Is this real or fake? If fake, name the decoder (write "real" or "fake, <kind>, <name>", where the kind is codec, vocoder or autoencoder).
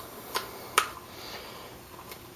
real